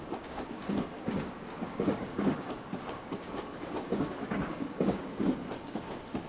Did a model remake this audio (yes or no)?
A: yes